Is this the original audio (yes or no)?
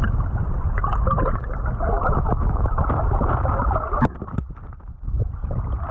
yes